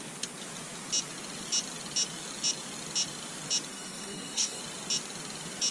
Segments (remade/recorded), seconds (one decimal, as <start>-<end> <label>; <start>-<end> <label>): 0.0-3.7 recorded; 3.7-4.6 remade; 4.6-5.7 recorded